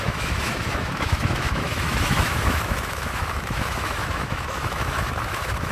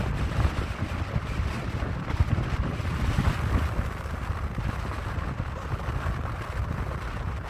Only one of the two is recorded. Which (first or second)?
second